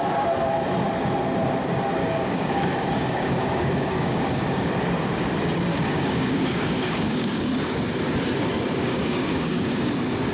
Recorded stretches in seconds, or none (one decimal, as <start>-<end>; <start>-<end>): 0.0-2.0; 4.7-5.7; 7.5-8.8; 9.9-10.3